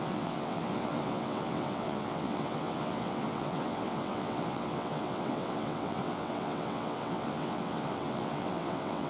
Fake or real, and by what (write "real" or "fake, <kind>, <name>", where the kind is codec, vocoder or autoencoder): fake, vocoder, WaveNeXt